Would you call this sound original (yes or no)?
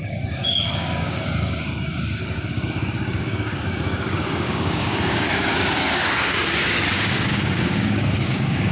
no